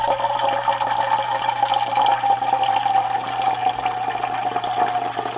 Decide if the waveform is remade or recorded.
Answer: recorded